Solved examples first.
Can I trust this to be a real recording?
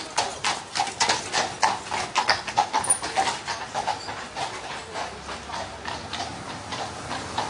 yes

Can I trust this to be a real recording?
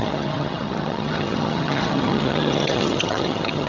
no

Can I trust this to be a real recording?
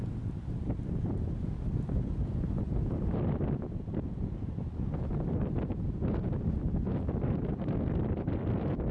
yes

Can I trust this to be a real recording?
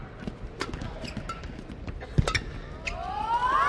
yes